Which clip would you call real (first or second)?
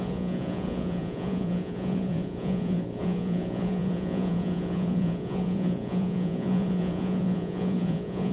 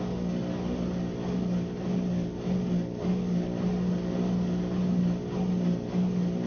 second